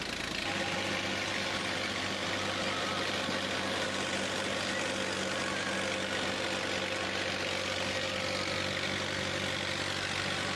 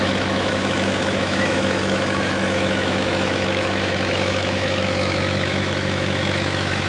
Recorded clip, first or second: first